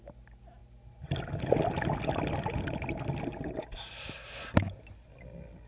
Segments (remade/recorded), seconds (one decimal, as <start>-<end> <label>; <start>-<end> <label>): 0.0-5.7 recorded